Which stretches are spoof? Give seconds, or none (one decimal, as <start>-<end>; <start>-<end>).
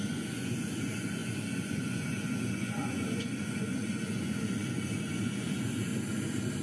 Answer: 0.0-5.9